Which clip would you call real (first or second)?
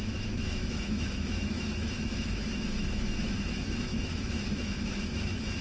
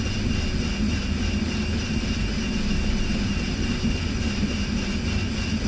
second